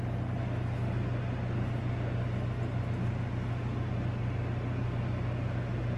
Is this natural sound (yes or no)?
yes